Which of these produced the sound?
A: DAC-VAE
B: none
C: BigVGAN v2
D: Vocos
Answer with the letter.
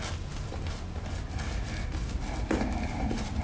B